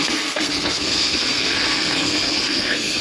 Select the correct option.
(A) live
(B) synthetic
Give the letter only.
B